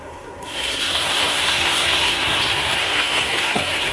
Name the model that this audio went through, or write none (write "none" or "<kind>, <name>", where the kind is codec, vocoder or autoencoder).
codec, SNAC